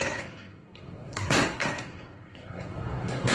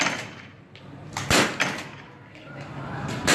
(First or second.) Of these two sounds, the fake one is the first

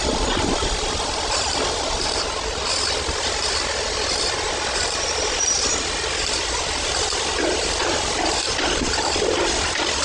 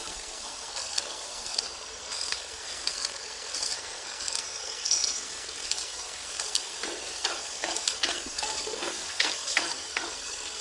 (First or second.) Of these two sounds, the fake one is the second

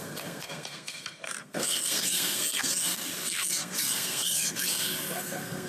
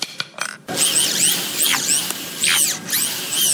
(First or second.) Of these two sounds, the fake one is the first